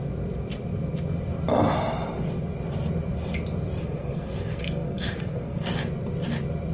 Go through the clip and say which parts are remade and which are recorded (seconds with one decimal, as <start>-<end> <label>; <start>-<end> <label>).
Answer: 0.0-3.8 recorded; 3.8-5.8 remade; 5.8-6.7 recorded